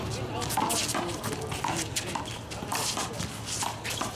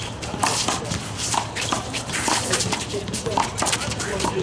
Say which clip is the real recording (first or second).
first